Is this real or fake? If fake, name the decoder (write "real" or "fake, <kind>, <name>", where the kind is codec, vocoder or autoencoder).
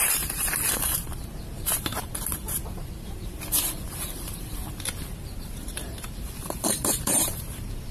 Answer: fake, vocoder, BigVGAN v2